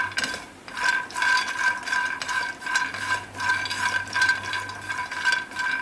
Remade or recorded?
recorded